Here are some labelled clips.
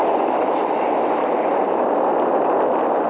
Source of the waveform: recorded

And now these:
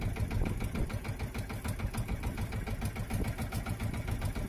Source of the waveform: recorded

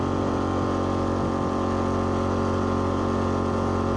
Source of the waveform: recorded